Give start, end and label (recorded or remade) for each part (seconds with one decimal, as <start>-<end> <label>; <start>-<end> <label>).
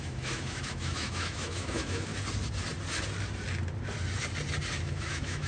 0.0-2.1 remade; 2.1-4.8 recorded; 4.8-5.5 remade